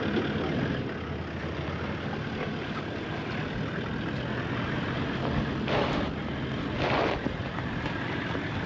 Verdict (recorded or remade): recorded